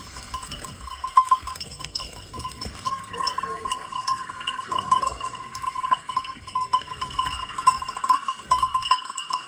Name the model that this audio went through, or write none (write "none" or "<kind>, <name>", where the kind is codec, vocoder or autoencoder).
codec, SNAC